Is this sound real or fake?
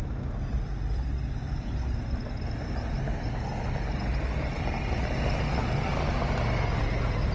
real